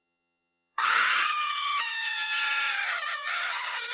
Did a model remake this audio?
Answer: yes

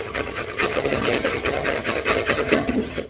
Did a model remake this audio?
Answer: yes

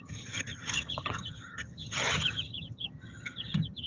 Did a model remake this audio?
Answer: yes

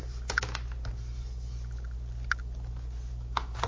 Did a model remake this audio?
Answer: no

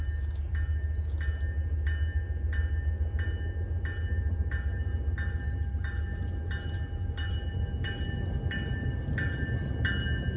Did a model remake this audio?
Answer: no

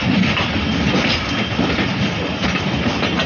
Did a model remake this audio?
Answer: no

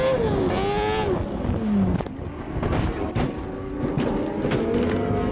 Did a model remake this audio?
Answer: no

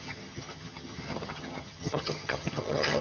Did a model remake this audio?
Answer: yes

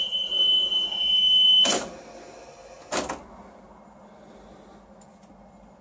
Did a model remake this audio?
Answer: no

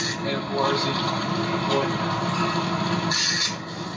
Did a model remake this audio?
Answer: no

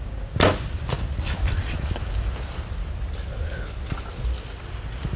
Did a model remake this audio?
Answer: no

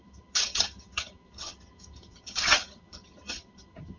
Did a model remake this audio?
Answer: yes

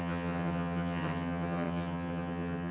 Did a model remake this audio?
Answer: yes